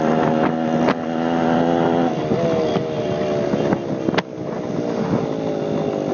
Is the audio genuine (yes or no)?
yes